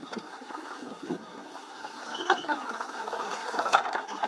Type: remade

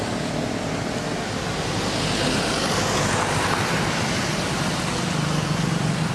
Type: recorded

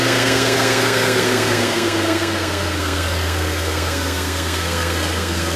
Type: remade